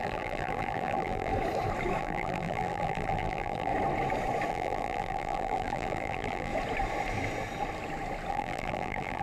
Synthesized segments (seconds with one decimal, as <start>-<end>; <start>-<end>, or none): 0.0-1.3; 2.0-3.7; 4.5-6.5; 8.3-9.2